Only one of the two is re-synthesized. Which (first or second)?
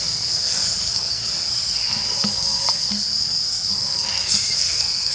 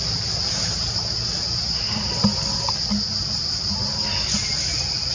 first